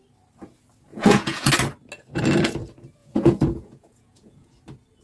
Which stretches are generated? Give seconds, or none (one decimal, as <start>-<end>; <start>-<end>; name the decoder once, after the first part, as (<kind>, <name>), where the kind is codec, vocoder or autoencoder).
0.9-1.5 (vocoder, Vocos); 3.0-4.5